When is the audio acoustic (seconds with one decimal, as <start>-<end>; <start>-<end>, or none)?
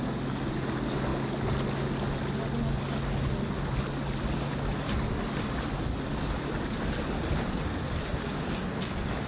0.0-9.3